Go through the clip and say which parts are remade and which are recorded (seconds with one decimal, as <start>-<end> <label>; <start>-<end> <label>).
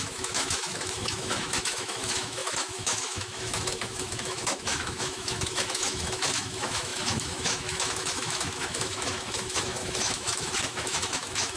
0.0-11.6 remade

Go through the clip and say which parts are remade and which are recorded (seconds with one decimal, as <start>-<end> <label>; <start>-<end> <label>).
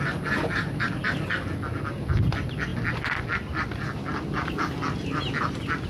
0.0-5.9 recorded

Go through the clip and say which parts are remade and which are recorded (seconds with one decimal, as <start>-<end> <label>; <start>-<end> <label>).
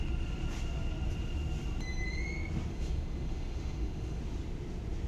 0.0-2.7 recorded; 2.7-4.2 remade; 4.2-5.1 recorded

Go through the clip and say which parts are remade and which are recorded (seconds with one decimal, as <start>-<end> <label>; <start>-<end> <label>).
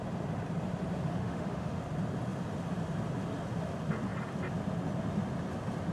0.0-1.1 recorded; 1.1-1.8 remade; 1.8-5.9 recorded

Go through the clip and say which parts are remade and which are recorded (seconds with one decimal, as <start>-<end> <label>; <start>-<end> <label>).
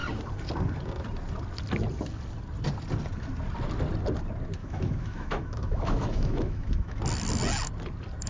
0.0-4.6 recorded; 4.6-7.0 remade; 7.0-8.3 recorded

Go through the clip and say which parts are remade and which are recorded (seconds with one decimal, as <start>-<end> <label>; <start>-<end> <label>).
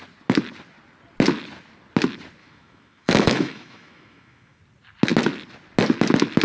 0.0-2.4 recorded; 2.4-4.6 remade; 4.6-6.4 recorded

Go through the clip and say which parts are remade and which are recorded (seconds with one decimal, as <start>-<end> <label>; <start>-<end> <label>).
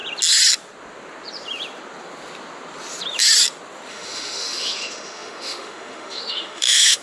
0.0-3.9 recorded; 3.9-7.0 remade